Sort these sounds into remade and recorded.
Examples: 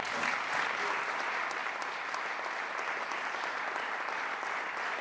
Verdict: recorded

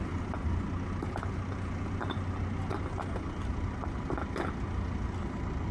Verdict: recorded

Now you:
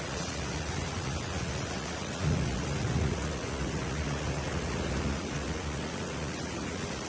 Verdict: remade